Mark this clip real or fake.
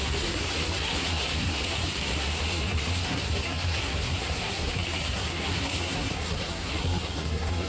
fake